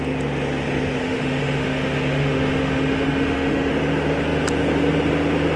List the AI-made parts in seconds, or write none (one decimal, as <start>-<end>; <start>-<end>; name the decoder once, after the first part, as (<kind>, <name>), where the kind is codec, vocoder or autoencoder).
1.0-3.7 (autoencoder, DAC-VAE)